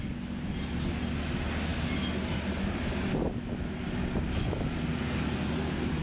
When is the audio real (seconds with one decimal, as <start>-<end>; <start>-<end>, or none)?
0.0-6.0